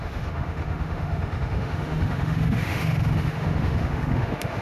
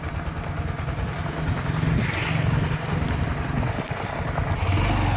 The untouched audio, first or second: second